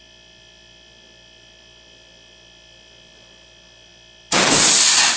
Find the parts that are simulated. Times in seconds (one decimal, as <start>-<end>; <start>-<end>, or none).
none